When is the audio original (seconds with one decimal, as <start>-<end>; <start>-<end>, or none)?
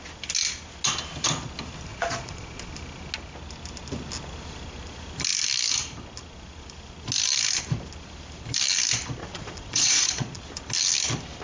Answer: 0.0-1.9; 2.7-9.2; 10.4-11.4